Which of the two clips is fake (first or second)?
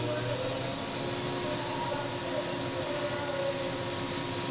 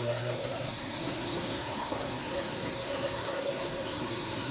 second